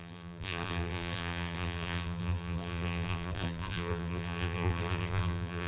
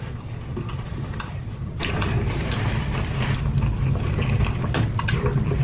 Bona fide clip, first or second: second